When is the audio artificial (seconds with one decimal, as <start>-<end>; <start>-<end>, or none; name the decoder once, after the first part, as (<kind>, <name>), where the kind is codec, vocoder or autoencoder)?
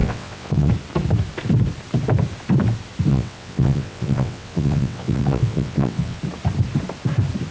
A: 0.0-0.7 (vocoder, WaveNeXt); 3.1-6.2